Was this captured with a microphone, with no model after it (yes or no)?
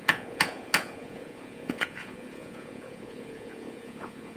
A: no